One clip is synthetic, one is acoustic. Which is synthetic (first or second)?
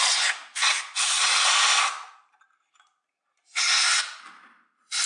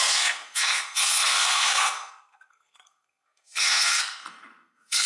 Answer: second